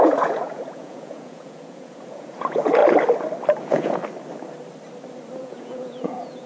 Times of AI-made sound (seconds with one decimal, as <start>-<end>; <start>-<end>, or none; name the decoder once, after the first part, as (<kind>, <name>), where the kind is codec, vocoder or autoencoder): 0.0-2.8 (vocoder, Vocos); 3.6-4.0; 5.4-6.5